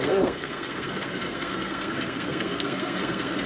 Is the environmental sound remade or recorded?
remade